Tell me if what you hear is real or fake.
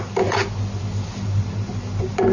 real